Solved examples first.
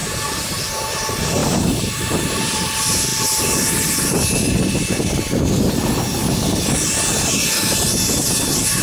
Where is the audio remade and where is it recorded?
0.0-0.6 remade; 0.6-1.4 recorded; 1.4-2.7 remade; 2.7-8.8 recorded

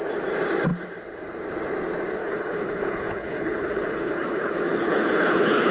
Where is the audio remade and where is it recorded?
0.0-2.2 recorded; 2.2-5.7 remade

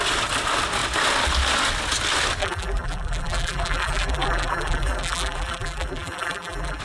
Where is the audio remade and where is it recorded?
0.0-2.4 recorded; 2.4-6.8 remade